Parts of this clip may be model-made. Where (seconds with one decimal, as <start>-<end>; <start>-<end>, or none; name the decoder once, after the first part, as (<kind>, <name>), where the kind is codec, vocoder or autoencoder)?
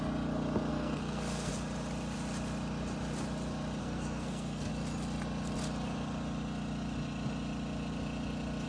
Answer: 0.7-1.5 (codec, SNAC); 3.8-4.7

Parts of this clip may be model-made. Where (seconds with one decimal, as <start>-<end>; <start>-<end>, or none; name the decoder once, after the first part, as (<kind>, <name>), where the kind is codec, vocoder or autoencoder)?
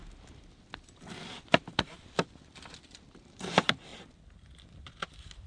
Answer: 3.3-3.9 (vocoder, BigVGAN v2)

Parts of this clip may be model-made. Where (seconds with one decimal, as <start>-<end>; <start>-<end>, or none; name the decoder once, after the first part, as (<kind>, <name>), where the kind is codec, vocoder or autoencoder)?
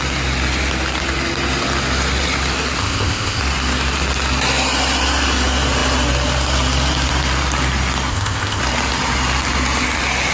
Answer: 2.8-3.4 (codec, ZipCodec); 8.1-8.6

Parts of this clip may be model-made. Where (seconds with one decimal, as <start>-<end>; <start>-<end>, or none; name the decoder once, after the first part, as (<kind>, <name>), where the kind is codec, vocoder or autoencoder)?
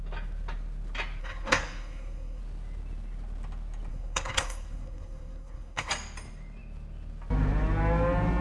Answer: 1.2-2.4 (codec, SNAC); 3.9-5.9